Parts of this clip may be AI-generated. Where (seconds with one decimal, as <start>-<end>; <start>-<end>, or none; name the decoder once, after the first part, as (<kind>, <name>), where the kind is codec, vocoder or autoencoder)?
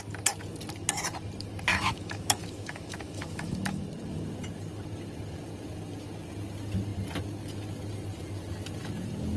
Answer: 1.7-3.8 (autoencoder, DAC-VAE)